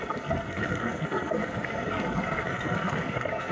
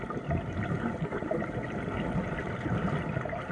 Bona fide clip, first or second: second